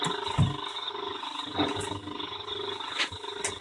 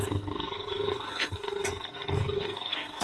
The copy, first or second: second